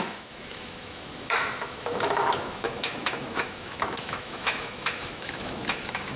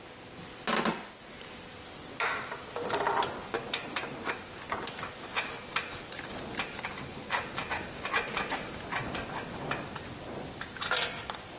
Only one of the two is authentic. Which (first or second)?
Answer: second